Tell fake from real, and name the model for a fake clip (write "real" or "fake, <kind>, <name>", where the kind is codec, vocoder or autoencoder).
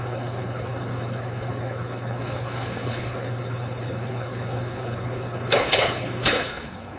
fake, codec, HILCodec